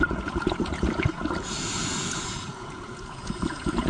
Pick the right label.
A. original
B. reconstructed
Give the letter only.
B